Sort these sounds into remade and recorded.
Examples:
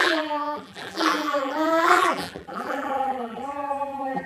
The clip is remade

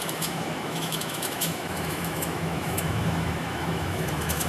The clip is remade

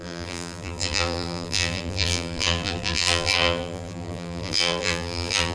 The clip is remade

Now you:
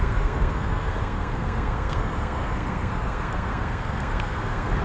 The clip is remade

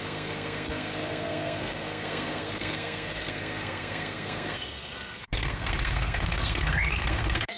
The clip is remade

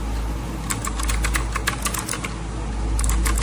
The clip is recorded